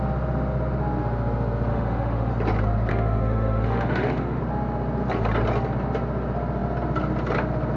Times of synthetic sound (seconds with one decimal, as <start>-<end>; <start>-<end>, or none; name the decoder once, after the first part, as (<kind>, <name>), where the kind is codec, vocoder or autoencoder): 1.7-2.3 (autoencoder, DAC-VAE); 2.9-4.4